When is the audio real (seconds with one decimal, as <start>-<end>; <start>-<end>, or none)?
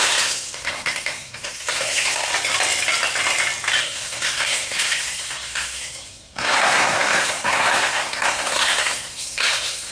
2.3-3.8